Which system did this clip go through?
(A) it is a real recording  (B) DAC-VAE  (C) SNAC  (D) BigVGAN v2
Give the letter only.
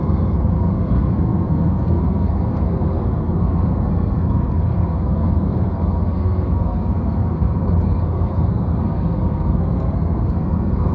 C